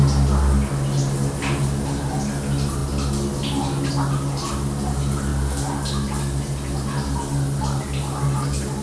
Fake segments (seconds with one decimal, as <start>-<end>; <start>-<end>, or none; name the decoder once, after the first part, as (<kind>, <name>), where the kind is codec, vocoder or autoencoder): none